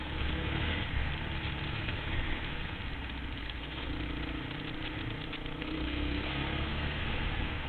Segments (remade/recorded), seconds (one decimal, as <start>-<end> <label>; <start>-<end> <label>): 0.0-1.1 remade; 1.1-1.7 recorded; 1.7-2.8 remade; 2.8-3.4 recorded; 3.4-3.9 remade; 3.9-5.6 recorded; 5.6-7.7 remade